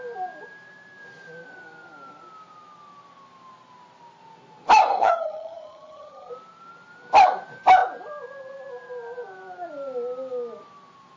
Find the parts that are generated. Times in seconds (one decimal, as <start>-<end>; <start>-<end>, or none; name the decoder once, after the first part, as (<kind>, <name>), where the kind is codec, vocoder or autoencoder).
4.9-6.3 (vocoder, HiFi-GAN)